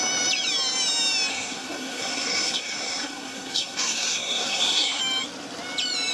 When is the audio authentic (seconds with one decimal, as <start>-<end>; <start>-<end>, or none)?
0.0-1.3; 5.0-6.1